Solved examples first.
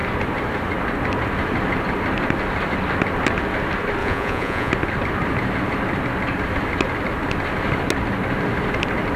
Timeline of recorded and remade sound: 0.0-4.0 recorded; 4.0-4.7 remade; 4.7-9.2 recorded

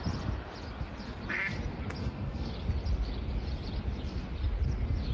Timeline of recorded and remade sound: 0.0-2.0 recorded; 2.0-2.5 remade; 2.5-5.1 recorded

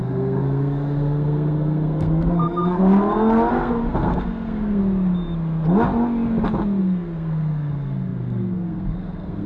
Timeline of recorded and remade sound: 0.0-2.8 remade; 2.8-3.5 recorded; 3.5-4.8 remade; 4.8-6.8 recorded; 6.8-9.5 remade

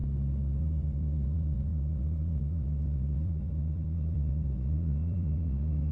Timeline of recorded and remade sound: 0.0-0.6 recorded; 0.6-5.9 remade

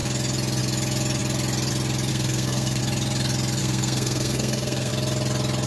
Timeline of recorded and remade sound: 0.0-2.1 recorded; 2.1-2.8 remade; 2.8-3.6 recorded; 3.6-4.9 remade; 4.9-5.7 recorded

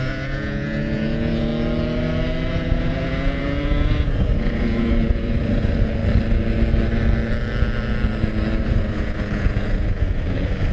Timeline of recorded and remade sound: 0.0-1.5 remade; 1.5-2.5 recorded; 2.5-6.0 remade; 6.0-8.6 recorded; 8.6-10.7 remade

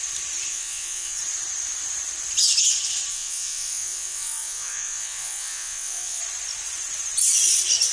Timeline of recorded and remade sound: 0.0-0.5 recorded; 0.5-1.2 remade; 1.2-3.1 recorded; 3.1-6.2 remade; 6.2-7.9 recorded

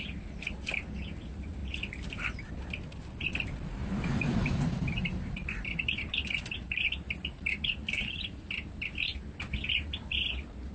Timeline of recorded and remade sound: 0.0-1.6 recorded; 1.6-2.5 remade; 2.5-3.8 recorded; 3.8-8.2 remade; 8.2-10.7 recorded